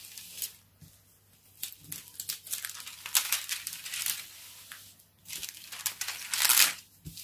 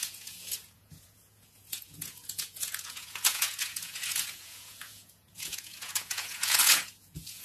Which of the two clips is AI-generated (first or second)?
second